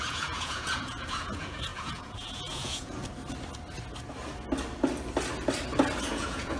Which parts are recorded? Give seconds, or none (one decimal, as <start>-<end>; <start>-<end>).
3.0-6.0